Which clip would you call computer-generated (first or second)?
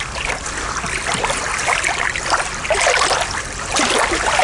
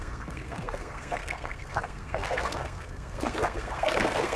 second